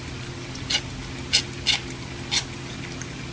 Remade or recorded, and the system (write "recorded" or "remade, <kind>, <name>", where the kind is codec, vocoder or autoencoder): recorded